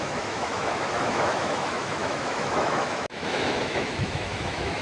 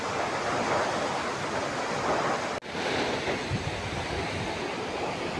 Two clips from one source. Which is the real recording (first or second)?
second